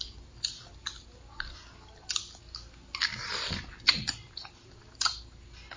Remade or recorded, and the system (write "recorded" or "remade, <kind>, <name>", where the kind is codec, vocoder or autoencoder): recorded